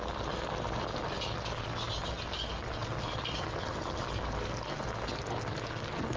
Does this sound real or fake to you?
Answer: real